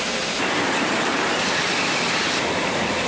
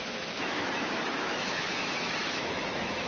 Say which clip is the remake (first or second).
second